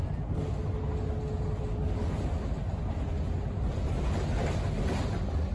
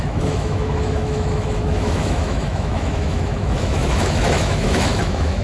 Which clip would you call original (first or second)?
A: first